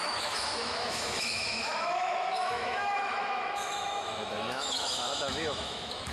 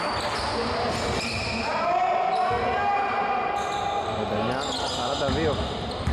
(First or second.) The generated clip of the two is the first